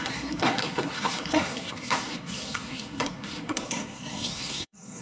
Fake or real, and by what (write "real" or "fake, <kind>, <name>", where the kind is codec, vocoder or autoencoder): fake, codec, SNAC